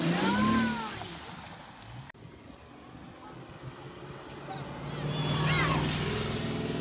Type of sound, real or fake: real